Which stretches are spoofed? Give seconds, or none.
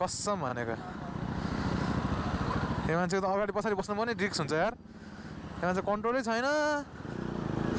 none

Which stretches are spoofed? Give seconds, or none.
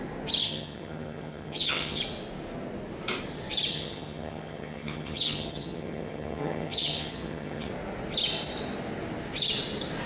0.4-2.0; 3.7-7.7